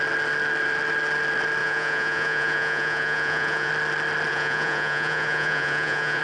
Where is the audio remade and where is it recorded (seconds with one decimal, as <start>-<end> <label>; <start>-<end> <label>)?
0.0-1.6 recorded; 1.6-3.7 remade; 3.7-4.3 recorded; 4.3-6.2 remade

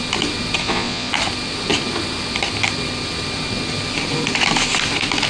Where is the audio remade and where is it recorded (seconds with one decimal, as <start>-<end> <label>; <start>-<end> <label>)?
0.0-0.6 recorded; 0.6-1.1 remade; 1.1-5.3 recorded

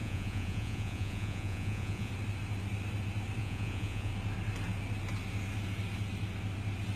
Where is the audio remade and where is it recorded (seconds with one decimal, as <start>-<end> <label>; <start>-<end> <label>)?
0.0-2.1 remade; 2.1-3.4 recorded; 3.4-4.1 remade; 4.1-7.0 recorded

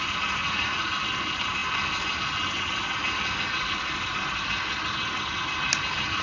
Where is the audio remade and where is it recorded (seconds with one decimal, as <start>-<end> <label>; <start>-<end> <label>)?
0.0-0.4 recorded; 0.4-0.9 remade; 0.9-6.2 recorded

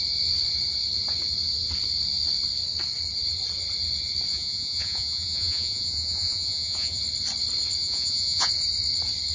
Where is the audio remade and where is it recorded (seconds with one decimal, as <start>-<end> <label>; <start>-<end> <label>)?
0.0-4.3 recorded; 4.3-7.0 remade; 7.0-7.8 recorded; 7.8-8.5 remade; 8.5-9.3 recorded

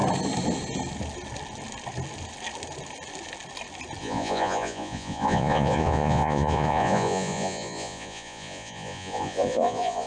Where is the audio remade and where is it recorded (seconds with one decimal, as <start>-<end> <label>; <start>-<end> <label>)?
0.0-4.0 recorded; 4.0-10.1 remade

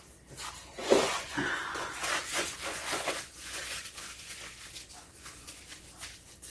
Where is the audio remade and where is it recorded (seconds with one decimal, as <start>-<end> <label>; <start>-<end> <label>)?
0.0-0.7 recorded; 0.7-4.5 remade; 4.5-5.0 recorded; 5.0-5.6 remade; 5.6-6.5 recorded

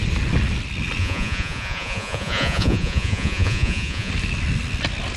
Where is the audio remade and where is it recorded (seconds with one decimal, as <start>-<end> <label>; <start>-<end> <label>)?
0.0-1.0 recorded; 1.0-4.1 remade; 4.1-5.2 recorded